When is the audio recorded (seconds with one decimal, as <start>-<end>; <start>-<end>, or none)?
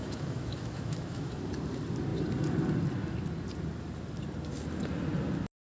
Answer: 1.4-5.8